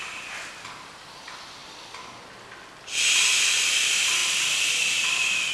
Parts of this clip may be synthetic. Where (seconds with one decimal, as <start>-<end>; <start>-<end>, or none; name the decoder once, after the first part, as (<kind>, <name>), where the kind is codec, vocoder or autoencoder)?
4.2-5.5 (vocoder, BigVGAN v2)